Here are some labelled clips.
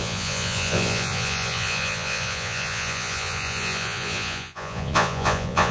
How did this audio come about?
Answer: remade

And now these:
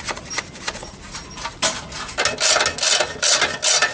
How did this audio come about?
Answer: recorded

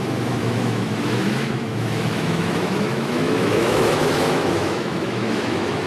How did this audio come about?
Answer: remade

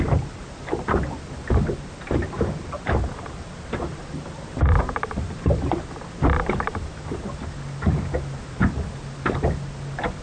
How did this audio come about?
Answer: recorded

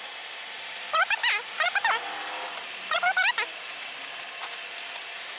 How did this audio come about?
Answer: recorded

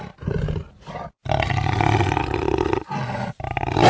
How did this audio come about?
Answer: recorded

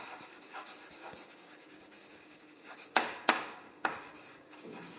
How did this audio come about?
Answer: remade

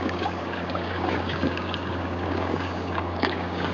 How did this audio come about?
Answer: remade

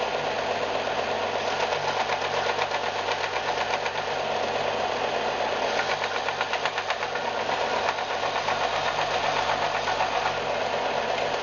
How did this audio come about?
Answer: recorded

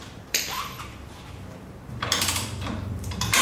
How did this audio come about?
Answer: remade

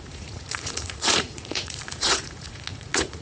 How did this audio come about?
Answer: remade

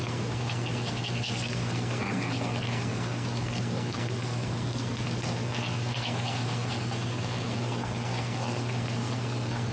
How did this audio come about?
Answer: remade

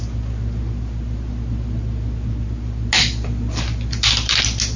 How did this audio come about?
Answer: recorded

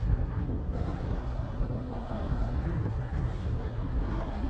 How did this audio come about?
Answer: remade